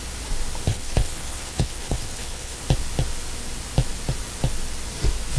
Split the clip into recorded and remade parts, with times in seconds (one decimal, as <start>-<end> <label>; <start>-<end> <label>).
0.0-0.7 recorded; 0.7-2.6 remade; 2.6-5.4 recorded